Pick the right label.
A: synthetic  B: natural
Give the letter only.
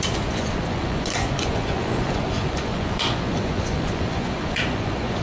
A